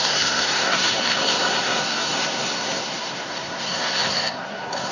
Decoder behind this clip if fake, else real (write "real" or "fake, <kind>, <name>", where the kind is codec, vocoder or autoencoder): fake, codec, SNAC